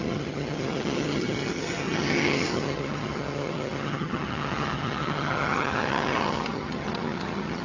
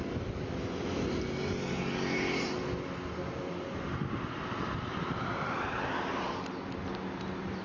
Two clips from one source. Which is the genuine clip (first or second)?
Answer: second